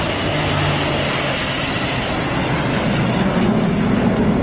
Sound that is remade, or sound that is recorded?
recorded